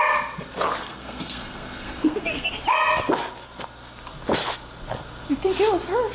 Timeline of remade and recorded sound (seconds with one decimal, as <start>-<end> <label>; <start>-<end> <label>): 0.0-0.8 recorded; 0.8-2.5 remade; 2.5-6.1 recorded